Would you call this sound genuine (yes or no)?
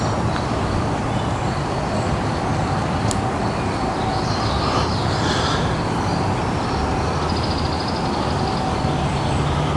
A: yes